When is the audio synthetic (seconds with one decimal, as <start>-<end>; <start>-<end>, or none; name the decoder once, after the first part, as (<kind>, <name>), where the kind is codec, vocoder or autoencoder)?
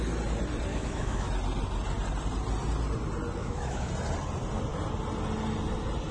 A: 0.7-1.3 (autoencoder, DAC-VAE); 3.4-3.9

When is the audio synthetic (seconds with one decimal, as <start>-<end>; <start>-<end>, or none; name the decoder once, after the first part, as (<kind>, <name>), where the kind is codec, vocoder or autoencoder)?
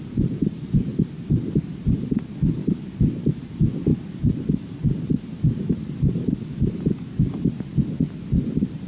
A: 1.7-2.2 (vocoder, BigVGAN v2)